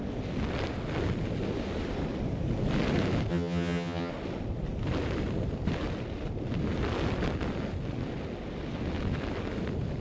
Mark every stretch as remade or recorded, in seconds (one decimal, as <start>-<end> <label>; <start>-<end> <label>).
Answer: 0.0-3.3 recorded; 3.3-4.1 remade; 4.1-10.0 recorded